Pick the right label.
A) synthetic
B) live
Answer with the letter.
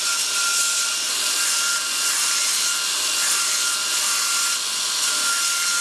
B